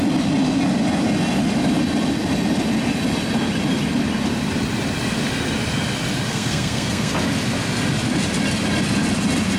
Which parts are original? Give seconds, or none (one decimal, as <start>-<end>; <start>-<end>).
0.0-6.3; 7.1-9.6